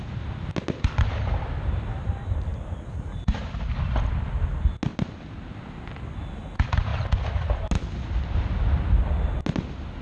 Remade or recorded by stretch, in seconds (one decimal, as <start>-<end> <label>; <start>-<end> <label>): 0.0-10.0 recorded